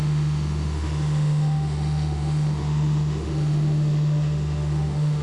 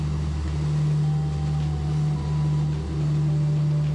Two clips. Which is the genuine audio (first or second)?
second